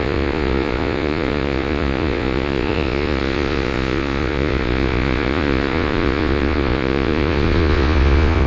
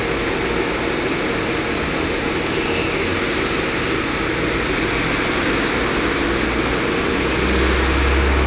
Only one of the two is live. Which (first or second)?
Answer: second